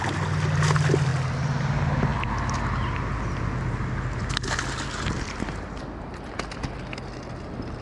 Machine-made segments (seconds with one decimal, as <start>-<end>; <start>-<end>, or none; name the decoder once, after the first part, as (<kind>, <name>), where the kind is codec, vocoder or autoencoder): none